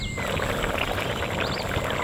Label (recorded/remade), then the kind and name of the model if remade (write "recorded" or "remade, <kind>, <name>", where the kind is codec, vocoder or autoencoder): recorded